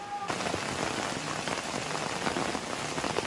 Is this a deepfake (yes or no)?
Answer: no